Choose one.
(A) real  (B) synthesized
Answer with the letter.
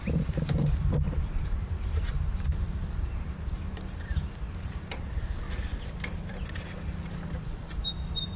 B